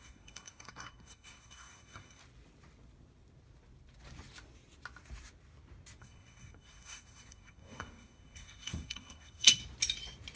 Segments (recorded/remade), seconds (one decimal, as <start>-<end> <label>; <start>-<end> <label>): 0.0-2.2 remade; 2.2-6.0 recorded; 6.0-9.6 remade; 9.6-10.4 recorded